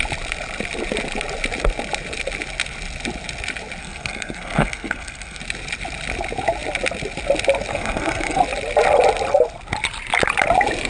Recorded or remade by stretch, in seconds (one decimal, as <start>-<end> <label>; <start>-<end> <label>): 0.0-3.8 recorded; 3.8-5.4 remade; 5.4-7.7 recorded; 7.7-8.4 remade; 8.4-10.9 recorded

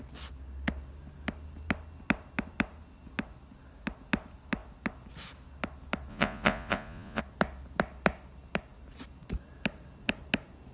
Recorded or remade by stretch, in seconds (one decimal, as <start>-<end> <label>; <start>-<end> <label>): 0.0-6.1 recorded; 6.1-7.2 remade; 7.2-10.7 recorded

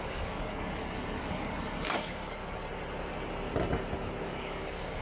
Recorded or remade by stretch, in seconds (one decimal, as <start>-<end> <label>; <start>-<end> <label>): 0.0-2.4 remade; 2.4-4.2 recorded; 4.2-5.0 remade

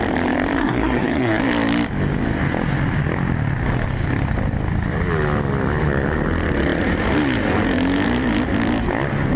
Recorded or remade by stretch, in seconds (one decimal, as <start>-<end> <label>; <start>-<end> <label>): 0.0-0.6 recorded; 0.6-1.4 remade; 1.4-9.4 recorded